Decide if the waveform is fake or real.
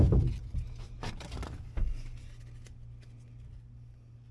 real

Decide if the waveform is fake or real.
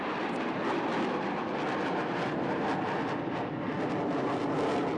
real